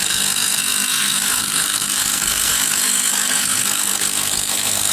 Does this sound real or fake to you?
fake